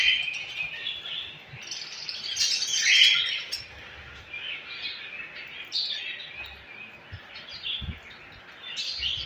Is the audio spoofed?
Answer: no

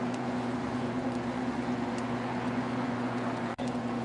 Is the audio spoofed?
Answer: yes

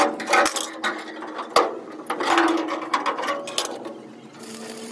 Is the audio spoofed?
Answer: no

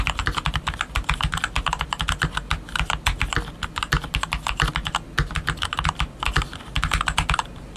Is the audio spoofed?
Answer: no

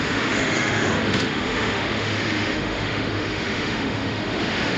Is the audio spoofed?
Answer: yes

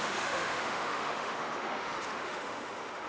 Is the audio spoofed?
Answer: yes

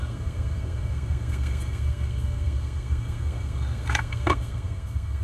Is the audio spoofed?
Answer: yes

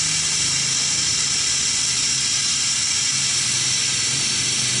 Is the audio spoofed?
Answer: no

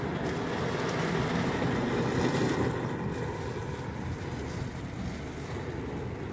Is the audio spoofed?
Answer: no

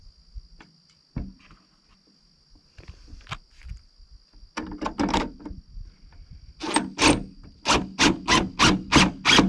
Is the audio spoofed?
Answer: no